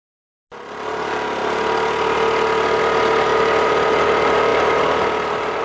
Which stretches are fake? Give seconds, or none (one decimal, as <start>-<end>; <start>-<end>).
3.3-4.0